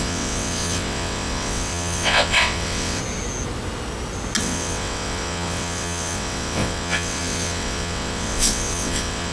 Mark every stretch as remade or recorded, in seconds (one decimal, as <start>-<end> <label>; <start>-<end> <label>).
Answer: 0.0-3.0 remade; 3.0-4.4 recorded; 4.4-9.3 remade